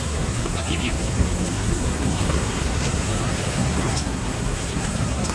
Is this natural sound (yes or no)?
no